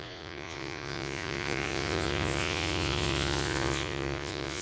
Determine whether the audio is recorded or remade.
remade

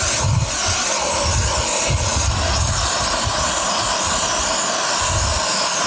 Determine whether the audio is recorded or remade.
recorded